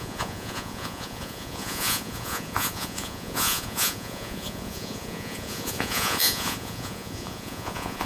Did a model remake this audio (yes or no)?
yes